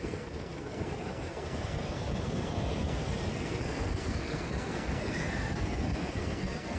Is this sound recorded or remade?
remade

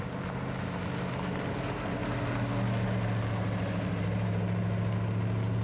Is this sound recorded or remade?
recorded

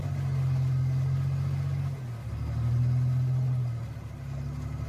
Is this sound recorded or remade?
recorded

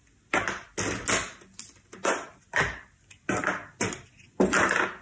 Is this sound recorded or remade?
recorded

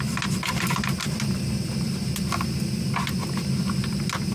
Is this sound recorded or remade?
recorded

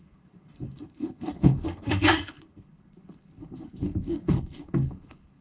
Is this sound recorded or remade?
remade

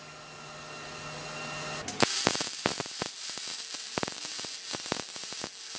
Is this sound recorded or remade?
recorded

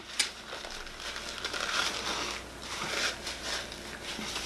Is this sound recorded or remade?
recorded